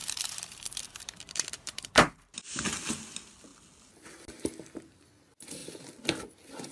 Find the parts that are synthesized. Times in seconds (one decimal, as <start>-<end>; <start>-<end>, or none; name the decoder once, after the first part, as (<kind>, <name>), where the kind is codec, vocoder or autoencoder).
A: 0.0-2.2 (vocoder, BigVGAN v2)